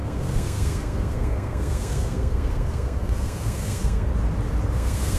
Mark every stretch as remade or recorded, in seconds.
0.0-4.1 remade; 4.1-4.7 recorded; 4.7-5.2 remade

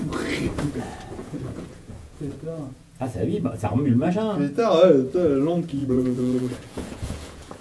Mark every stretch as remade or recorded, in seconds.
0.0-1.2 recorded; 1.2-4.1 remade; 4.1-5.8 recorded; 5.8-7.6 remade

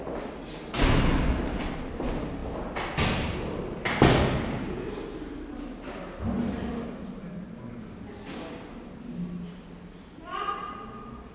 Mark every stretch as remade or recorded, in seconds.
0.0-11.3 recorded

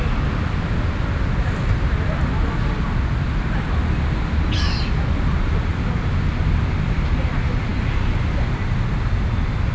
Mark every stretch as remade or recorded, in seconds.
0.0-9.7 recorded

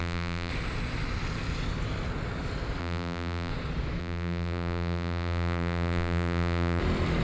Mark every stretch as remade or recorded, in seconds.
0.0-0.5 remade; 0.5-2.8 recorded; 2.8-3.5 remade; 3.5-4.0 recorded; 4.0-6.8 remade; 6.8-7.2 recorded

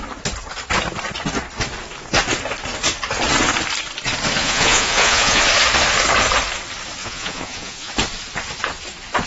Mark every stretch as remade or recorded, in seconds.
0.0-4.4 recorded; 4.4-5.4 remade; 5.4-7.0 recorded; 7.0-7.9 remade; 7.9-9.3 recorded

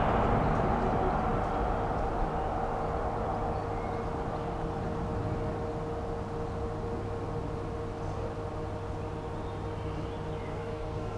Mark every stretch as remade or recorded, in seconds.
0.0-10.5 recorded; 10.5-11.2 remade

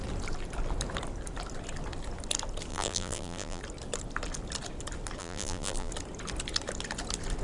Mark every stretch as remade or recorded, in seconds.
0.0-2.7 recorded; 2.7-3.6 remade; 3.6-5.2 recorded; 5.2-5.9 remade; 5.9-7.4 recorded